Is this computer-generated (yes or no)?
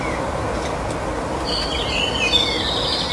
no